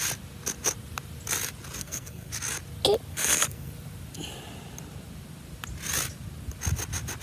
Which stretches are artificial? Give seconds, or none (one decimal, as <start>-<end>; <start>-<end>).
1.8-2.3; 3.1-3.7